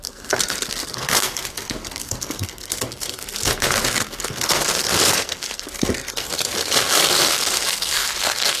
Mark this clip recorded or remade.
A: remade